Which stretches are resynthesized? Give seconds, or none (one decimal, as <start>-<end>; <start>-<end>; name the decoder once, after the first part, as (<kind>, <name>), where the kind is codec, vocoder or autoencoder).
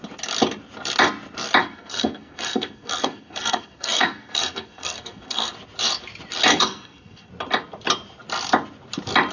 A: 1.6-5.5 (codec, SNAC); 6.5-7.3